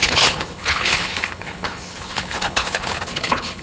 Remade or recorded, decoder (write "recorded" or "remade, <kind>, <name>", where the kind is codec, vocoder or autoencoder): remade, codec, HILCodec